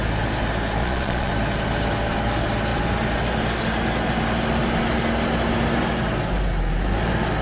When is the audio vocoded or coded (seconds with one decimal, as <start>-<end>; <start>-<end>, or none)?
0.8-1.3